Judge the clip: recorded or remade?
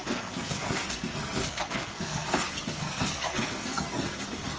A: remade